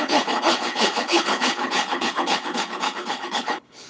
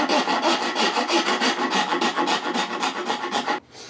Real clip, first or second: second